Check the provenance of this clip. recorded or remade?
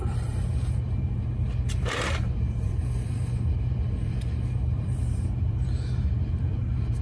remade